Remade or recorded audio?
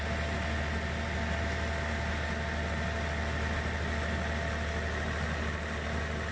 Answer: recorded